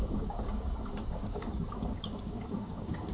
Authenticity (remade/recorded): remade